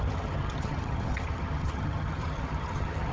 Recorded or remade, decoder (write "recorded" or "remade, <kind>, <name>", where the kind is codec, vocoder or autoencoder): remade, vocoder, HiFi-GAN